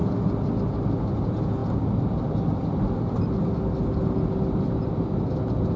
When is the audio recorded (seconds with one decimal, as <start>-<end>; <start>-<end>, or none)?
0.0-5.8